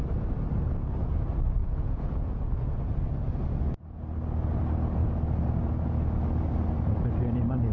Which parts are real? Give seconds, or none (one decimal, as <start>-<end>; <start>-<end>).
0.0-1.6; 2.8-7.7